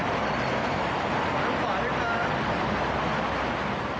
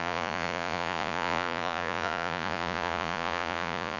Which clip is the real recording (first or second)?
first